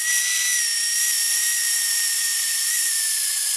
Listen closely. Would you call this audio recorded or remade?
recorded